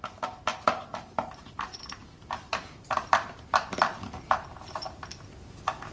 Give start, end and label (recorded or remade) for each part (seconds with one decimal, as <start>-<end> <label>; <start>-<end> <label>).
0.0-0.5 recorded; 0.5-4.0 remade; 4.0-5.9 recorded